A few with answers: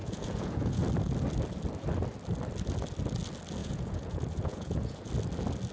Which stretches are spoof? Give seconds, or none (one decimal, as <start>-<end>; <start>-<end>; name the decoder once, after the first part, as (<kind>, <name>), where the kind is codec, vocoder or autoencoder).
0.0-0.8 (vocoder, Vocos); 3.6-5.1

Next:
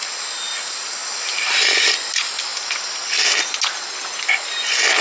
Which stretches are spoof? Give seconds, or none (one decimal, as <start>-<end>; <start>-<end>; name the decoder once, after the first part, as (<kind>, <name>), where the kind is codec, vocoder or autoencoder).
none

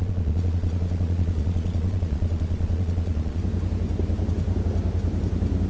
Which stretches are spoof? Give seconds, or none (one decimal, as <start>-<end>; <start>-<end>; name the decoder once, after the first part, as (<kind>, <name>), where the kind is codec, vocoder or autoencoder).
0.0-3.4 (vocoder, Vocos)

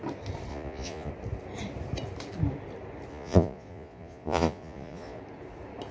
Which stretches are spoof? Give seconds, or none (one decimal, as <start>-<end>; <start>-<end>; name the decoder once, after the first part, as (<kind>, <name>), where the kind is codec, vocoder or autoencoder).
0.5-1.1 (vocoder, Vocos); 3.1-5.2